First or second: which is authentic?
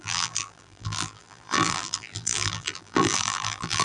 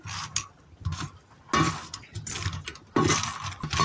second